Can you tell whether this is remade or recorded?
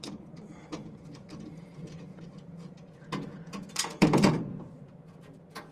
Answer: remade